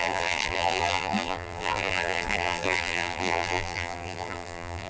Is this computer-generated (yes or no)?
yes